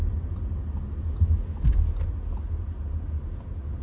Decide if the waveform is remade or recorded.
recorded